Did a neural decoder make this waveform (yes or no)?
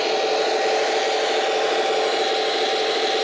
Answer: no